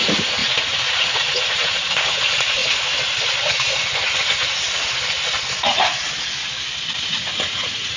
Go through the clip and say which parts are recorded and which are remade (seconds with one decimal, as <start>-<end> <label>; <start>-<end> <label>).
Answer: 0.0-2.6 remade; 2.6-7.0 recorded; 7.0-8.0 remade